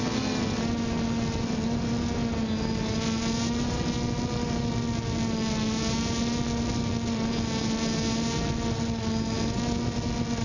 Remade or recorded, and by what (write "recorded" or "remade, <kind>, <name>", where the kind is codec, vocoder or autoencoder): recorded